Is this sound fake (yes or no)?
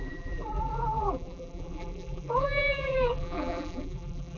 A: yes